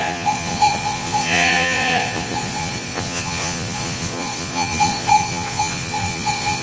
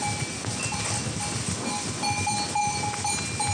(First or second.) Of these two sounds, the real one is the second